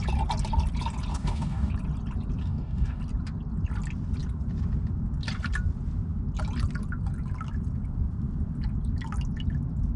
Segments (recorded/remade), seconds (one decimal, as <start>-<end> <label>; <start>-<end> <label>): 0.0-1.1 recorded; 1.1-1.7 remade; 1.7-2.4 recorded; 2.4-3.0 remade; 3.0-10.0 recorded